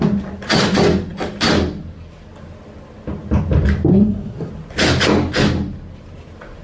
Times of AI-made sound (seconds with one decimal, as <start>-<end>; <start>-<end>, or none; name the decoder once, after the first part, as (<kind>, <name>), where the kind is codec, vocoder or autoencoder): 3.9-4.5 (codec, SNAC)